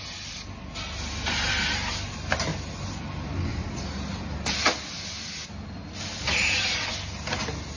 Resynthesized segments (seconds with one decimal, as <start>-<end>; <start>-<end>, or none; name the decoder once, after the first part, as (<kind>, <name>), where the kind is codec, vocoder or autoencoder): none